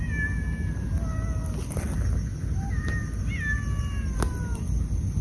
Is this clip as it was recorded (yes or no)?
yes